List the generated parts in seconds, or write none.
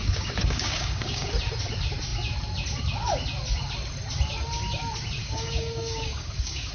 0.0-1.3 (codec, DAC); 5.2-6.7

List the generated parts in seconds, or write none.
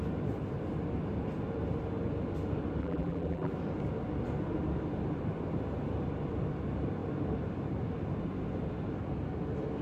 2.8-3.5 (vocoder, BigVGAN v2)